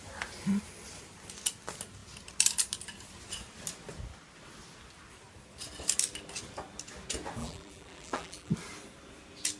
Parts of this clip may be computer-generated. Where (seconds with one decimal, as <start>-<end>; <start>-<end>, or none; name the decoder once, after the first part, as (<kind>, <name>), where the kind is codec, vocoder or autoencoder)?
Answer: 7.4-8.5 (vocoder, BigVGAN v2)